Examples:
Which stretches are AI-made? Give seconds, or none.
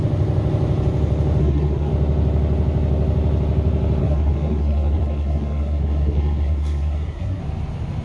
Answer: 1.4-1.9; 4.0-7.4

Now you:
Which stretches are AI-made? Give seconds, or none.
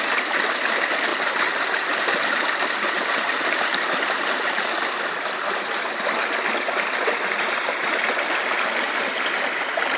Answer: 1.1-4.6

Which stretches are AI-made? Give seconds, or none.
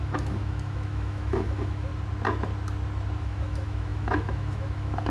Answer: 0.0-1.9; 3.2-5.1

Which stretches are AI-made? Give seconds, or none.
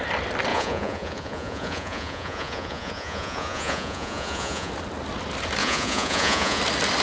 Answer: 0.5-4.7; 5.6-6.6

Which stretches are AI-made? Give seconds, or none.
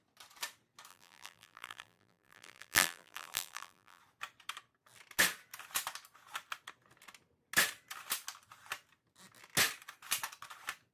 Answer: 0.9-4.0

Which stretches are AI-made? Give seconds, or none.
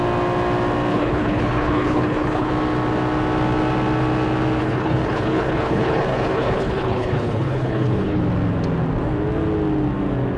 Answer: 0.9-2.5; 4.6-8.2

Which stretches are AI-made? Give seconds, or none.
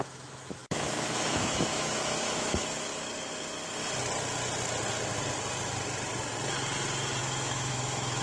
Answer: 0.0-2.9; 7.2-8.2